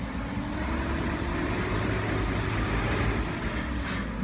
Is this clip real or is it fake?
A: real